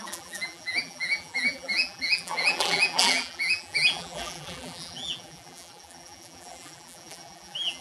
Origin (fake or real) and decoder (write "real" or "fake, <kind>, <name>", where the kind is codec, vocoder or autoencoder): fake, vocoder, BigVGAN v2